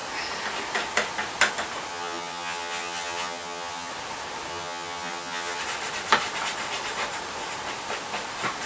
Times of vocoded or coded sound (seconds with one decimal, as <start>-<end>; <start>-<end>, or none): 1.9-3.9; 4.5-5.6